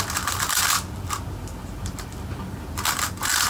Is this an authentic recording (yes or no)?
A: yes